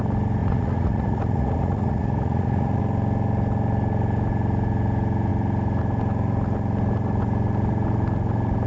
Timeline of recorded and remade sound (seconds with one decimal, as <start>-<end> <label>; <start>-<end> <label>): 0.0-0.4 recorded; 0.4-2.8 remade; 2.8-8.7 recorded